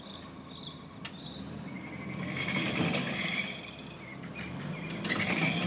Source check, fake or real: real